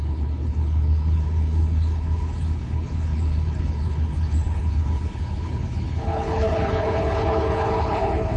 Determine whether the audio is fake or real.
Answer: fake